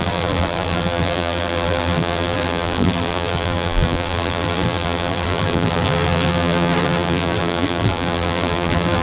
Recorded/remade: remade